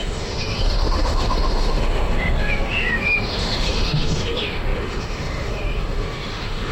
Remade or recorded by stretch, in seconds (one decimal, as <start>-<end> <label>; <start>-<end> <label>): 0.0-6.7 remade